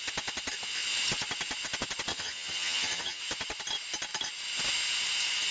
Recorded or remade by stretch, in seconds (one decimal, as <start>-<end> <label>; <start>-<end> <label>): 0.0-2.1 recorded; 2.1-3.2 remade; 3.2-5.5 recorded